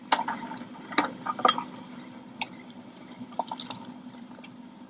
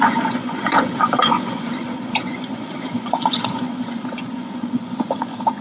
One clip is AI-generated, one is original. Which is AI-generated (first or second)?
second